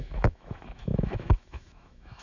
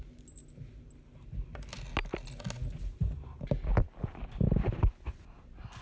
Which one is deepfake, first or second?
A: first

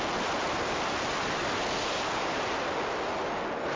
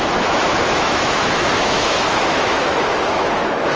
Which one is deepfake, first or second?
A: second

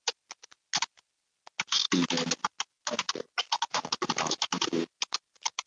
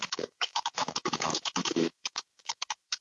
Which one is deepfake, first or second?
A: second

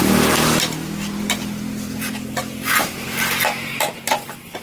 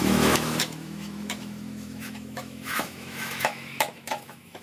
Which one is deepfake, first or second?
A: second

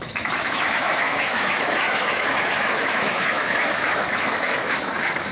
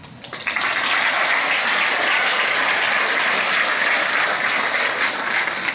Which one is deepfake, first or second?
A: first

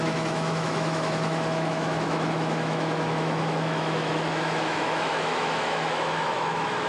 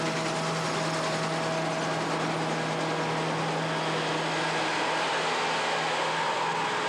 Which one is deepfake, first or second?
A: first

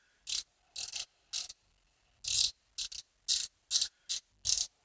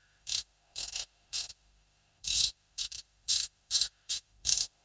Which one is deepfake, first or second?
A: second